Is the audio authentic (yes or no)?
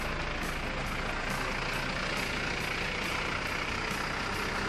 yes